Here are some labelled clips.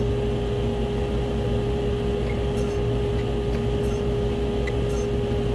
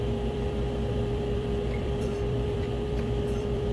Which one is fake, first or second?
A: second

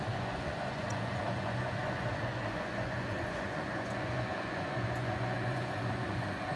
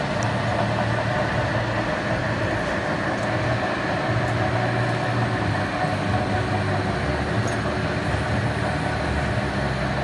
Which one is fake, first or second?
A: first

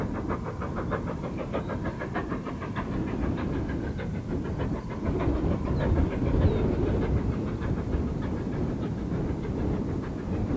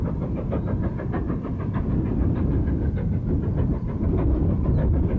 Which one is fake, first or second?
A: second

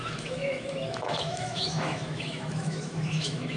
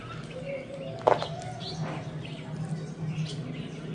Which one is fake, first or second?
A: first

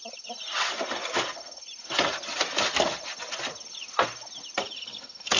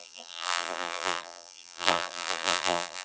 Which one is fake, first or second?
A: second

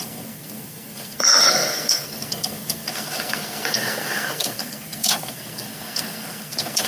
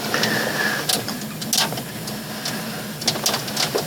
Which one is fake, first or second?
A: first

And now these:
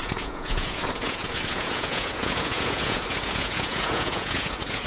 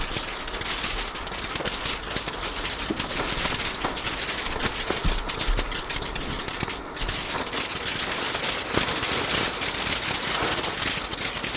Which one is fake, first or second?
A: first